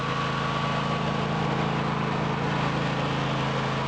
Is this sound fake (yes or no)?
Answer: no